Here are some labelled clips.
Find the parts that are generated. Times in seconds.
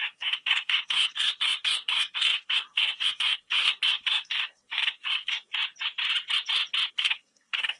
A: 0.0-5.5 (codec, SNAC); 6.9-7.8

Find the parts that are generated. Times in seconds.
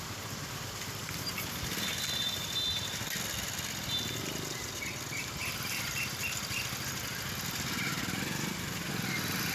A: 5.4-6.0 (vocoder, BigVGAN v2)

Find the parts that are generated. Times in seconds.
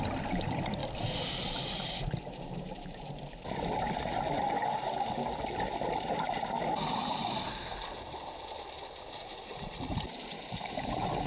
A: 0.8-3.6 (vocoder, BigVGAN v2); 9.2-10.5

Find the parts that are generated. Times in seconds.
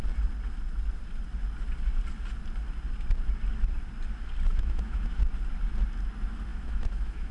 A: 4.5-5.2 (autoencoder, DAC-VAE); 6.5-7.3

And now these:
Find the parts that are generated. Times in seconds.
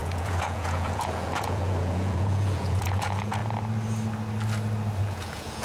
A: 0.0-3.4 (vocoder, Vocos); 5.0-5.6